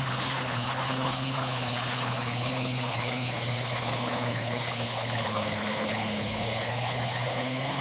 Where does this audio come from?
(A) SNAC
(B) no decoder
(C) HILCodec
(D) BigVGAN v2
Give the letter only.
C